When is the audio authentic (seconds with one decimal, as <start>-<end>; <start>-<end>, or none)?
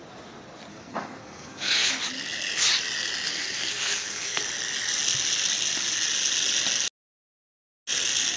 0.0-0.7; 1.9-3.3; 4.4-8.4